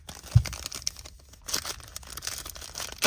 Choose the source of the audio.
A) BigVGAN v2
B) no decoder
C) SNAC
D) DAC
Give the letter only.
B